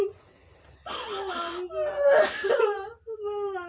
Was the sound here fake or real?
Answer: real